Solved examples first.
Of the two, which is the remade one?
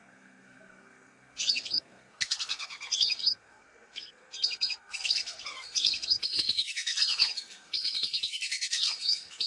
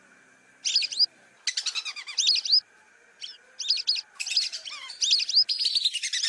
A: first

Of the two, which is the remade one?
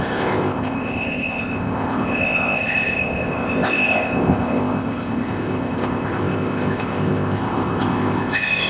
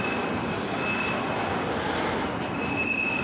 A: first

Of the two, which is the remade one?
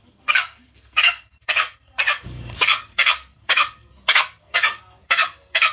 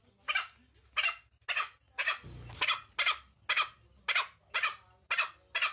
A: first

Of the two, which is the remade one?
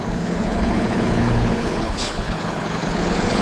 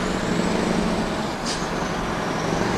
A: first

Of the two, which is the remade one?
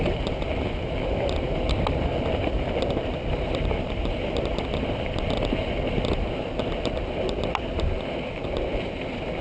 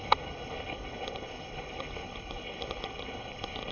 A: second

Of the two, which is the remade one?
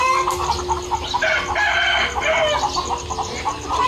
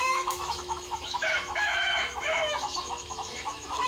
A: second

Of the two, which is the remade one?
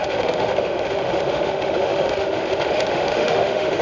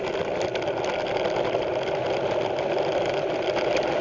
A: first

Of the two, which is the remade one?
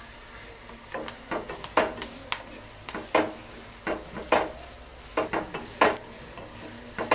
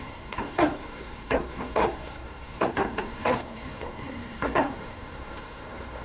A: second